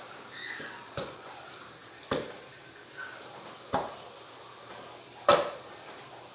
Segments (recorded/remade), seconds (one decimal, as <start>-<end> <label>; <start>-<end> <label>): 0.0-0.4 recorded; 0.4-1.3 remade; 1.3-6.3 recorded